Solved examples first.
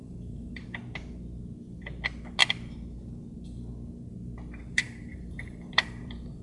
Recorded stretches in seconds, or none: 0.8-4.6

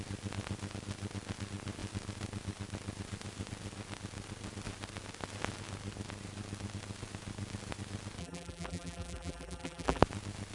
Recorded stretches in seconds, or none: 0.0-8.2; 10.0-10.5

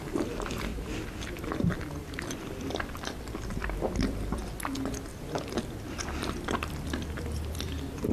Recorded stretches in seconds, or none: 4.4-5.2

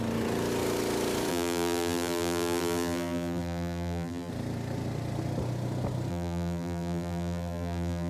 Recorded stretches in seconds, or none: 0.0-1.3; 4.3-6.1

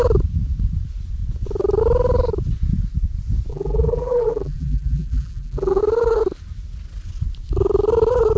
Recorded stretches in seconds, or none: 0.0-3.5; 5.8-8.4

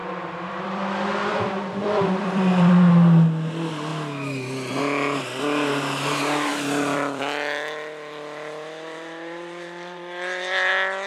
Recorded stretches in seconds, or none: 2.9-6.5; 10.7-11.1

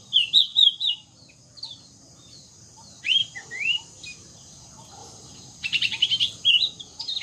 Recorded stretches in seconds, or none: 0.0-5.0; 6.5-7.2

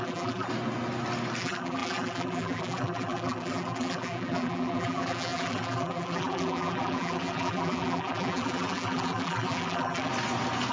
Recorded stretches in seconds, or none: 0.5-1.4; 10.1-10.7